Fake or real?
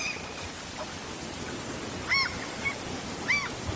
real